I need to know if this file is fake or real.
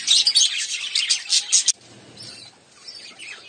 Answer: real